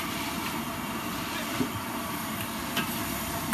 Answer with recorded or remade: remade